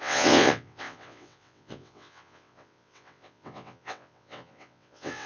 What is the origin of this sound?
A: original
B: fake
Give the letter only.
B